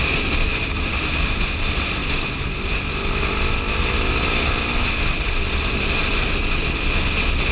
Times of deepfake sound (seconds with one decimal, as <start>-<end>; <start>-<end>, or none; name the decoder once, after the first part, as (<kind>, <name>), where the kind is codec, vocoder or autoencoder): none